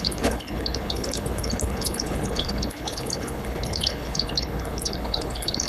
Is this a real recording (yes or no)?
no